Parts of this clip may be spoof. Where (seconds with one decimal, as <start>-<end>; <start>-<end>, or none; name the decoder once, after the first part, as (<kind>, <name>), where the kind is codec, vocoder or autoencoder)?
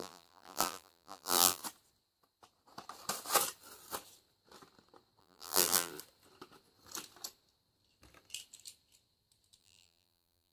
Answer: 0.0-1.6 (vocoder, BigVGAN v2); 5.2-5.9; 9.6-10.5